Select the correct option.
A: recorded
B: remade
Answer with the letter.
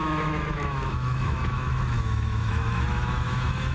B